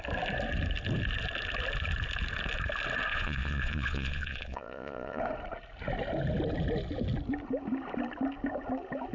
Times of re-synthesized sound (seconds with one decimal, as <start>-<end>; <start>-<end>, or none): 3.1-5.2